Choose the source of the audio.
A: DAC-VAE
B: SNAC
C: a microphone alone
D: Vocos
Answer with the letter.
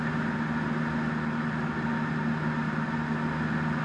C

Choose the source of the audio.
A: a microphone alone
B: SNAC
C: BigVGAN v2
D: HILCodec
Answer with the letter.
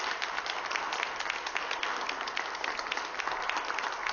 A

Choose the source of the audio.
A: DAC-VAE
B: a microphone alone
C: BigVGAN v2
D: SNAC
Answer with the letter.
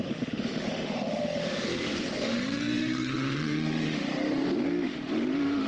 A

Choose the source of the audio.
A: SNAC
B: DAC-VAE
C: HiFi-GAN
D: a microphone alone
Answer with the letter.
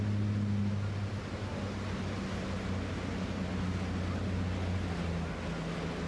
D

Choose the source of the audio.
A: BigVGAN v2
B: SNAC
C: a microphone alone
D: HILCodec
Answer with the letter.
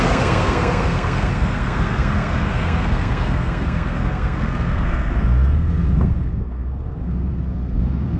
B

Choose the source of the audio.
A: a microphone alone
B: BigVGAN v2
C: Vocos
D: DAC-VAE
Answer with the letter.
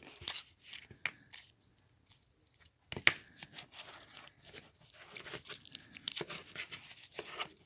A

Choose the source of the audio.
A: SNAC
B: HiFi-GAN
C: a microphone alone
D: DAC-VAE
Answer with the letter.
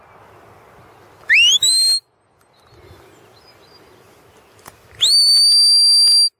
C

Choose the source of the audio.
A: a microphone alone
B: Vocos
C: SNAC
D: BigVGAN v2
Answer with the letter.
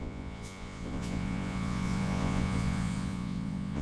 B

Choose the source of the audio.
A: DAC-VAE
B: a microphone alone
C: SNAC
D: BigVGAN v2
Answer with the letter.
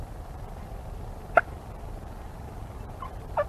B